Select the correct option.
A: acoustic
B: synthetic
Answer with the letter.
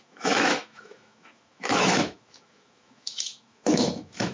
B